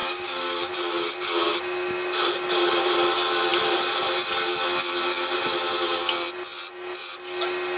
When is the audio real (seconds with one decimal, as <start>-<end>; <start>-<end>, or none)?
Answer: 0.7-7.8